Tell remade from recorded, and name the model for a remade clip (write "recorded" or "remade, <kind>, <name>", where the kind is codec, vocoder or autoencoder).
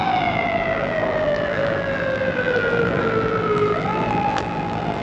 remade, vocoder, BigVGAN v2